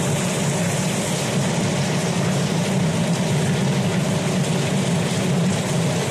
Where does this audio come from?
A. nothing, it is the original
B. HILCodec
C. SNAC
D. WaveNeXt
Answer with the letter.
A